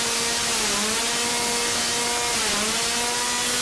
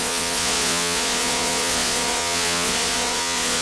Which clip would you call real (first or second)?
first